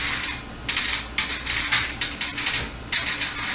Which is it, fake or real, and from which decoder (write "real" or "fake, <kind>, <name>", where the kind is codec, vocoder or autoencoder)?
real